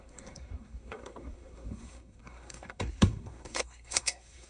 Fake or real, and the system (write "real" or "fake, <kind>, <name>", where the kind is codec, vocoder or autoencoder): fake, codec, SNAC